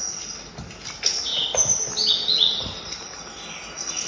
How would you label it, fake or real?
real